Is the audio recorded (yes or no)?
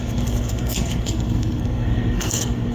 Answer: no